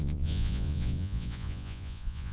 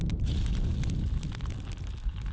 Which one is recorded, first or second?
second